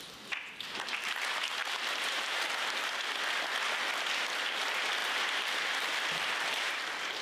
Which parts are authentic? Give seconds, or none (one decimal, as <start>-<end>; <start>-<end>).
0.0-1.6; 2.8-5.0; 6.8-7.2